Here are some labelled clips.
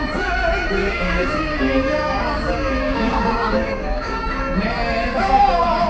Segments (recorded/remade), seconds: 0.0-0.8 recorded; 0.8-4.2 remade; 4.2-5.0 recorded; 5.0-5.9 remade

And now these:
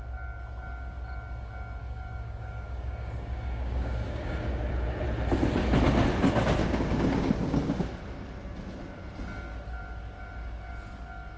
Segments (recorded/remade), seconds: 0.0-1.8 recorded; 1.8-4.7 remade; 4.7-6.6 recorded; 6.6-7.9 remade; 7.9-11.4 recorded

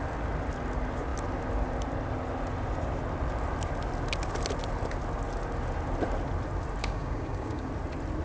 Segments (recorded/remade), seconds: 0.0-6.8 recorded; 6.8-7.7 remade; 7.7-8.2 recorded